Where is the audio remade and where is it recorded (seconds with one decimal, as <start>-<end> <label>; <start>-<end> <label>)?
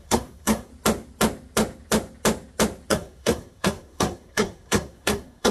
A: 0.0-0.7 remade; 0.7-2.9 recorded; 2.9-5.5 remade